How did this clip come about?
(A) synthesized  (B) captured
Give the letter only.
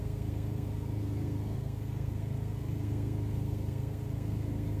A